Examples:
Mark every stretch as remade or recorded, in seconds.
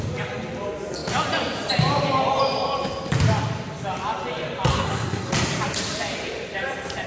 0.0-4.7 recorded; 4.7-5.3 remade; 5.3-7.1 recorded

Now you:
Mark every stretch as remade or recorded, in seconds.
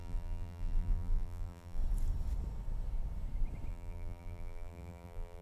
0.0-1.8 remade; 1.8-3.7 recorded; 3.7-5.4 remade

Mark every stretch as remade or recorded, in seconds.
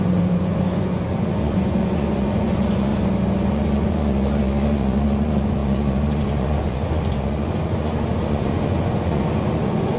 0.0-2.9 remade; 2.9-3.5 recorded; 3.5-10.0 remade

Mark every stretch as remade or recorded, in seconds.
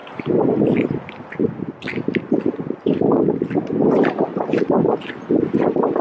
0.0-6.0 recorded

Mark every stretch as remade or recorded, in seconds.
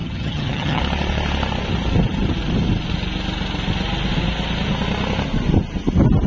0.0-0.8 remade; 0.8-6.3 recorded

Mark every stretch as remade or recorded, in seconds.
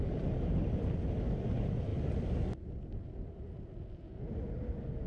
0.0-5.1 recorded